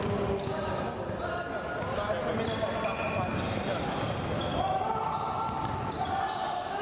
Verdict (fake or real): real